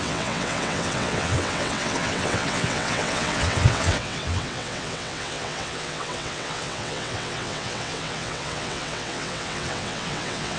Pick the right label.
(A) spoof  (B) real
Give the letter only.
A